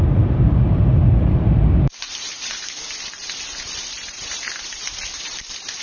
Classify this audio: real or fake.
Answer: fake